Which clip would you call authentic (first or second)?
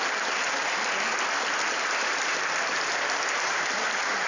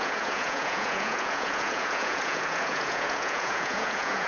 first